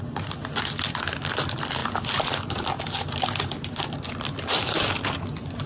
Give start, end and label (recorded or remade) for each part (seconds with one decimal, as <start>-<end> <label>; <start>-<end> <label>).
0.0-5.7 recorded